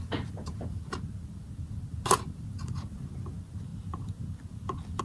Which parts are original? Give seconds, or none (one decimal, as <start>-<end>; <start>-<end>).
0.0-5.0